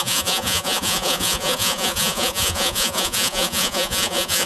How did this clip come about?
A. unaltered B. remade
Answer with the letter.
B